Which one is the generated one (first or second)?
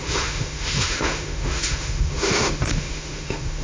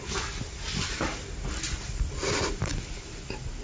first